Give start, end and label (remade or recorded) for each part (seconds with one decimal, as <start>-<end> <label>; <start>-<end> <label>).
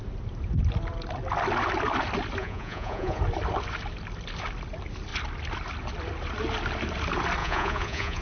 0.0-2.4 recorded; 2.4-3.2 remade; 3.2-7.4 recorded; 7.4-8.2 remade